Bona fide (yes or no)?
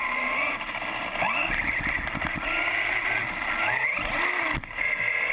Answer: yes